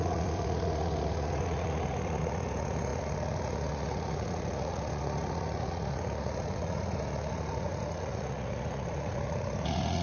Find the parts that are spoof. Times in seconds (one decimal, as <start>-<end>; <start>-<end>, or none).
0.0-10.0